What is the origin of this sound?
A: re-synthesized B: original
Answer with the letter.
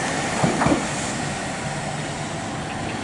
B